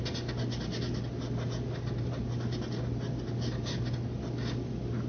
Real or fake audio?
real